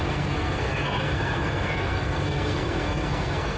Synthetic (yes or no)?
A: yes